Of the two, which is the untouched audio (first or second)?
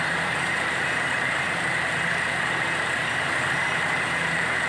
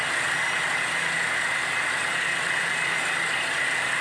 second